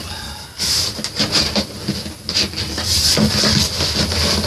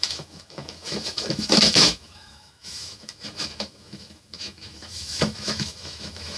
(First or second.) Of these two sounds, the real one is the first